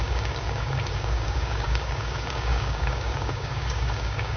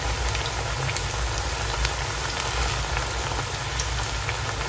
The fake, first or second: first